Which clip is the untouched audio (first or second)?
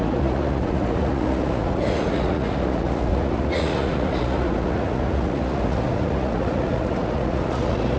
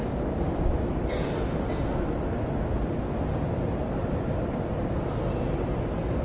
second